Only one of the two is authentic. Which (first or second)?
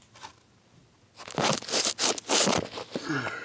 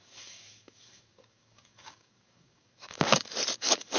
first